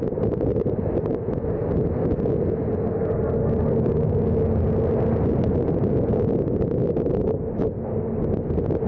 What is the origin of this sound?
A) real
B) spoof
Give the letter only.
A